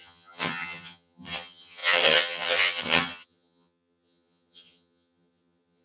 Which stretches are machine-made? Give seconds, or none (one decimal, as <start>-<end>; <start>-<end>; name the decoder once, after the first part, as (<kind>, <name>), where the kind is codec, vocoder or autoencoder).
0.0-5.8 (vocoder, HiFi-GAN)